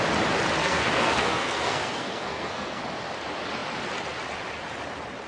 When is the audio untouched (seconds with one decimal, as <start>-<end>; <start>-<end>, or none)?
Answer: 0.0-0.6; 2.8-5.3